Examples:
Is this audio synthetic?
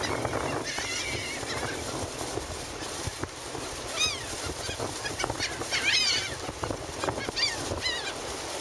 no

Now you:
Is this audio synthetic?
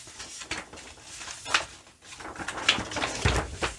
no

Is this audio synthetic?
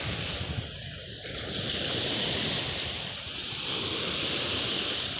no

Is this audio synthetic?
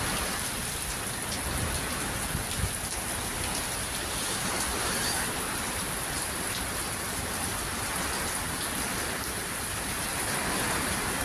no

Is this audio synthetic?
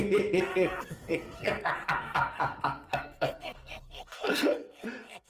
yes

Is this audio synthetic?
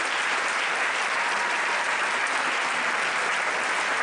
no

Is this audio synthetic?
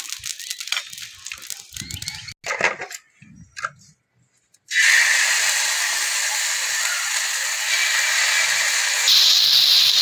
no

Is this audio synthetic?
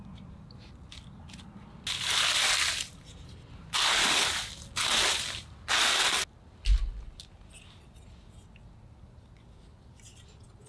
no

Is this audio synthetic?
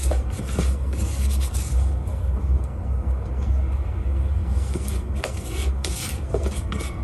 yes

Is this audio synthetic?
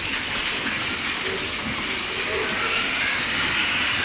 no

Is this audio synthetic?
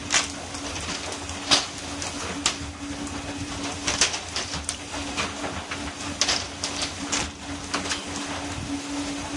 no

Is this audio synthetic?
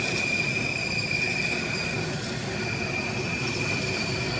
no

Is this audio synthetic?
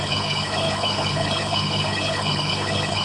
yes